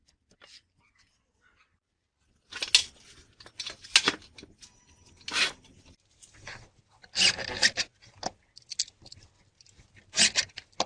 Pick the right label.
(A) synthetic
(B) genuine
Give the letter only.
B